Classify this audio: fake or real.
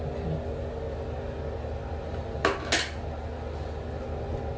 real